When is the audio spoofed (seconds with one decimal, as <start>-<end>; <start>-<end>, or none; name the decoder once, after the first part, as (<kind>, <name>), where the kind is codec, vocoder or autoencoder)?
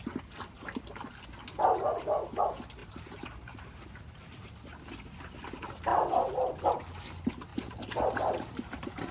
2.8-4.8 (vocoder, BigVGAN v2); 7.5-9.1